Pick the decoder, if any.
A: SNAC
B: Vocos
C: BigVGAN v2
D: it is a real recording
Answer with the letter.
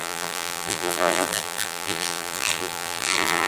C